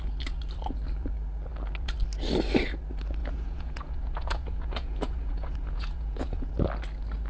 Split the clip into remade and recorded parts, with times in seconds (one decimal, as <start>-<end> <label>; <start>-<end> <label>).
0.0-3.2 recorded; 3.2-6.5 remade; 6.5-7.3 recorded